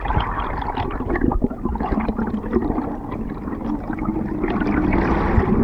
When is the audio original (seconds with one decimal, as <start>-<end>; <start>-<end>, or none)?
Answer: 0.0-5.6